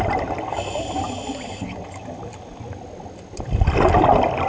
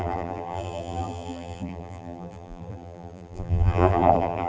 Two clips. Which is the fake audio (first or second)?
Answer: second